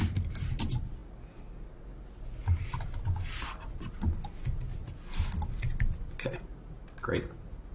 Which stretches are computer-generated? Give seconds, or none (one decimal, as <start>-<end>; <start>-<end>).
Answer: none